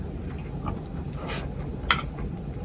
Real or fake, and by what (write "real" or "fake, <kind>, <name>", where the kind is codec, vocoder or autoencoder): real